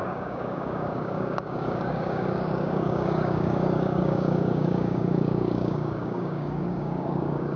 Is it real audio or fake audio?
fake